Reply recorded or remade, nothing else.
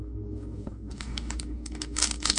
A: remade